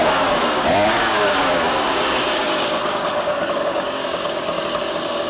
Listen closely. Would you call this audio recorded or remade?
remade